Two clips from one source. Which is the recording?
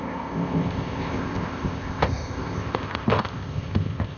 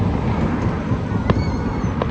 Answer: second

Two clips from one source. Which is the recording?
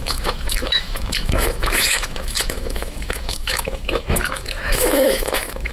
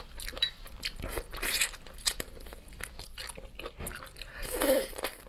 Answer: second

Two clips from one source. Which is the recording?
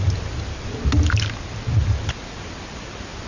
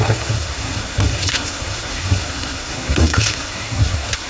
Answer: first